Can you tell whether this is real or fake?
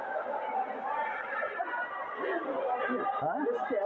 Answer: real